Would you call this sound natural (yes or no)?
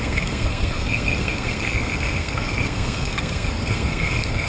no